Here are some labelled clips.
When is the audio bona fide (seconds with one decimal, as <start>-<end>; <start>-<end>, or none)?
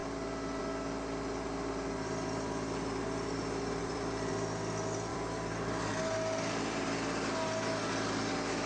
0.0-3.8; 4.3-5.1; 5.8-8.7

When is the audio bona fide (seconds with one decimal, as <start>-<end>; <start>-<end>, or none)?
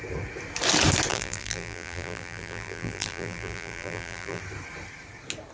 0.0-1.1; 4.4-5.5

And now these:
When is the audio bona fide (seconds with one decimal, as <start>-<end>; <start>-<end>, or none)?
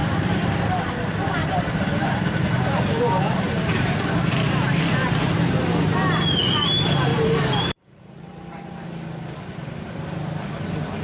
0.6-1.4; 4.8-7.1; 8.7-11.0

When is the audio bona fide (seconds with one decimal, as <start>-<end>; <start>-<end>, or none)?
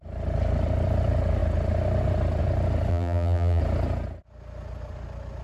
0.0-2.9; 3.6-5.4